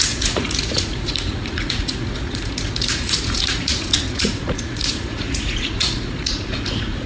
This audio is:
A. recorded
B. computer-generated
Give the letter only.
B